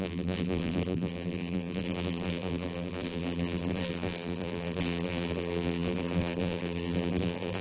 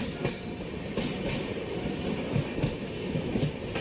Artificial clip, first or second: first